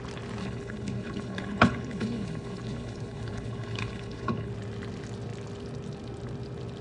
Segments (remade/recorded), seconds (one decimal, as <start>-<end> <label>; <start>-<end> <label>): 0.0-0.4 recorded; 0.4-4.5 remade; 4.5-6.8 recorded